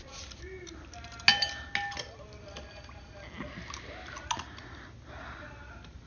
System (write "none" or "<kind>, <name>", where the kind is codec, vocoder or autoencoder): none